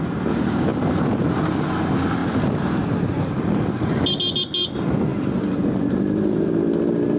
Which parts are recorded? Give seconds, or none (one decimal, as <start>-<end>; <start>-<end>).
0.0-5.1; 6.6-7.2